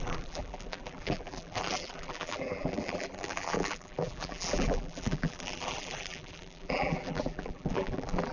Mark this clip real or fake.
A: fake